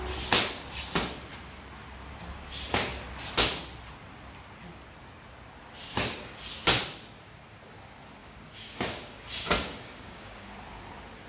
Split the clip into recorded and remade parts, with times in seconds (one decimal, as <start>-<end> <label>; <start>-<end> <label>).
0.0-8.2 recorded; 8.2-10.5 remade; 10.5-11.3 recorded